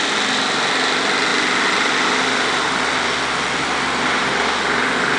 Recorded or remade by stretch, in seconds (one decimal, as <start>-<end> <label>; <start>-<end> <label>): 0.0-4.2 recorded; 4.2-5.2 remade